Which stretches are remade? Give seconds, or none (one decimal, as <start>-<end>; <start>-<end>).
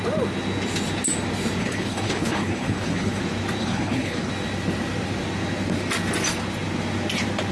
1.6-3.2; 3.6-4.3